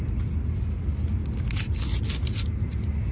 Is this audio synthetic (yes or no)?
no